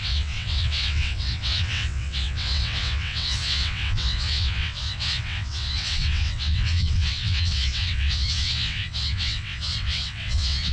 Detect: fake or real fake